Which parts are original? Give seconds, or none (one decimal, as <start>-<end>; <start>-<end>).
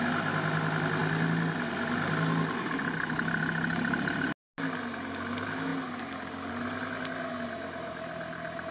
0.0-8.7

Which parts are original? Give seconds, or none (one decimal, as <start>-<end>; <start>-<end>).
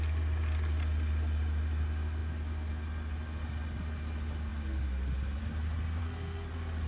0.0-6.0; 6.5-6.9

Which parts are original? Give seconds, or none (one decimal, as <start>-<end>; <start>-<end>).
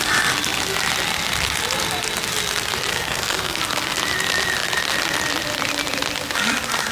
0.0-2.9; 3.6-6.9